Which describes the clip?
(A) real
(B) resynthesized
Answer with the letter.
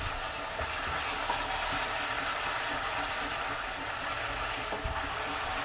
A